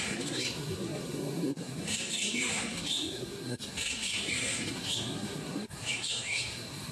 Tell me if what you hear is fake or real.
fake